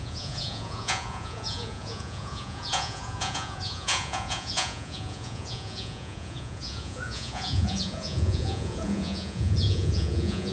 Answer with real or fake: fake